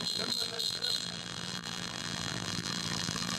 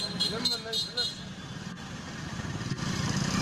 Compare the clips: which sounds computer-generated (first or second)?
first